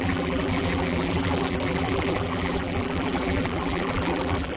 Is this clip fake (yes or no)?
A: yes